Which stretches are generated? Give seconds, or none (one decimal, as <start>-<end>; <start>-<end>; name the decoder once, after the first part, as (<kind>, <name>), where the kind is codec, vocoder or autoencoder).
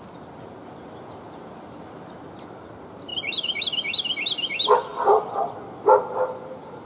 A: 3.1-3.6 (vocoder, BigVGAN v2); 4.9-5.4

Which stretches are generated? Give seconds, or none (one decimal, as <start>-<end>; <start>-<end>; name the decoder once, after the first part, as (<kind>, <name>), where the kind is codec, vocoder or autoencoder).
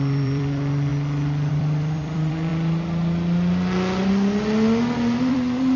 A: 0.0-0.9 (vocoder, BigVGAN v2); 1.5-2.5; 5.3-5.8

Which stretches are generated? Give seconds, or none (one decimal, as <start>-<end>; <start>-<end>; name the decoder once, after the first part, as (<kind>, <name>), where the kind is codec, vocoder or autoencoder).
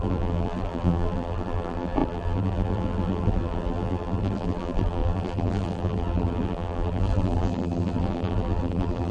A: 0.0-9.1 (vocoder, BigVGAN v2)